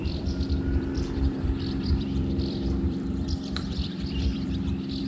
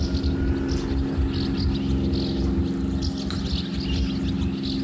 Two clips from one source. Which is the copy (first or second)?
first